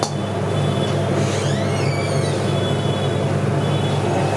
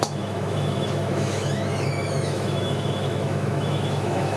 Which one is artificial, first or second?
second